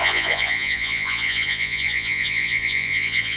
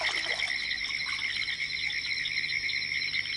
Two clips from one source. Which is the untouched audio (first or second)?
second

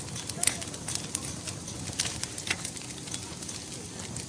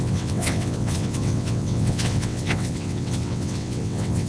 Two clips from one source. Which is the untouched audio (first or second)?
first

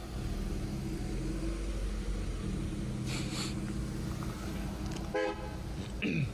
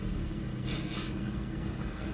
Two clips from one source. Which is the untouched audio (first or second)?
first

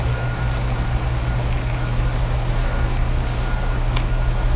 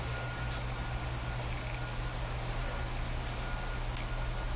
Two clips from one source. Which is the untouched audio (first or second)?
second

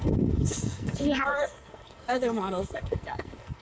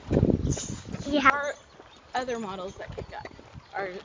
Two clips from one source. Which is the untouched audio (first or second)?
second